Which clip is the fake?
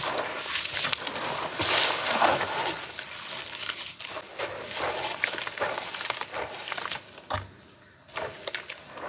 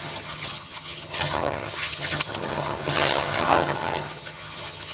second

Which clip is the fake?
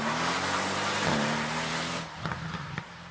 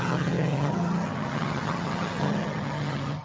second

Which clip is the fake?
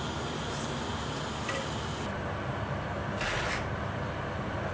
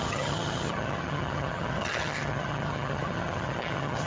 second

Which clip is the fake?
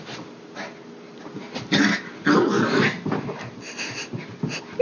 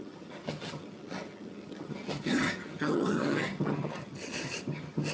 second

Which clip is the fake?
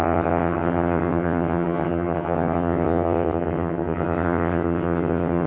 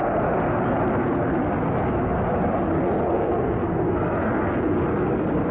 first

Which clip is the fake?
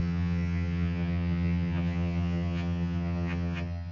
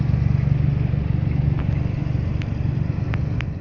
first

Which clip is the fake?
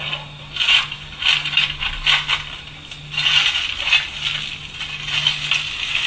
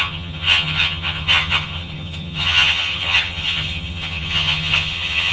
second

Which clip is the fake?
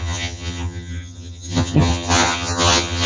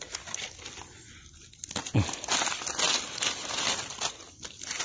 first